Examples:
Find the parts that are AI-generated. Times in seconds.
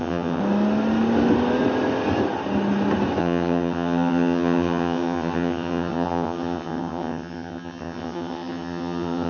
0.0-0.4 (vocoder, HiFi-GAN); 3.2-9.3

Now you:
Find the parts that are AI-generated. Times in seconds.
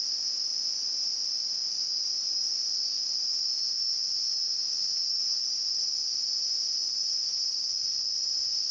none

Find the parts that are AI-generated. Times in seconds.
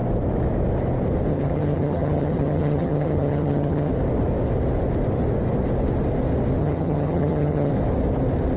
1.3-3.9 (vocoder, HiFi-GAN); 6.6-7.7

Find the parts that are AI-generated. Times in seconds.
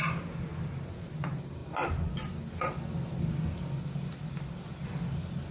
none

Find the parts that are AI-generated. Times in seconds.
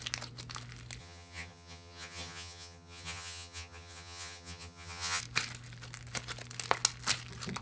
1.0-5.2 (vocoder, HiFi-GAN)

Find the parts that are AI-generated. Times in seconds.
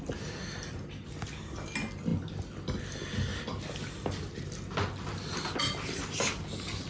none